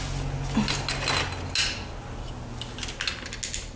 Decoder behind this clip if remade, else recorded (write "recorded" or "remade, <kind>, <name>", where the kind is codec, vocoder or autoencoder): recorded